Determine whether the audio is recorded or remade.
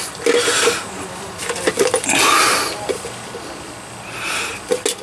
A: recorded